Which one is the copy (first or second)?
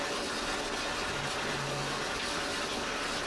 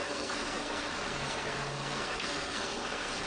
second